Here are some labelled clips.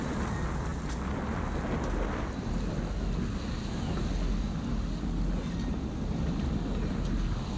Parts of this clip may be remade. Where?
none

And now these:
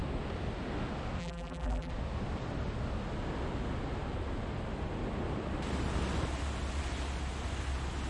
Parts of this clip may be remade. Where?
1.2-1.9